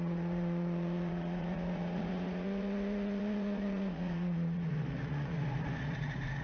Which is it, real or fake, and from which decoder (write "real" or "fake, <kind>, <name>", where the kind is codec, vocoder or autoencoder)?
fake, vocoder, Vocos